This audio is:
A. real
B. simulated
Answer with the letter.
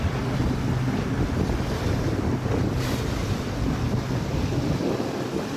A